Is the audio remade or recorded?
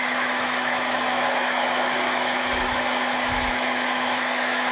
remade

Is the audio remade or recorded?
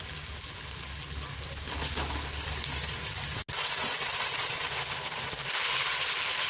recorded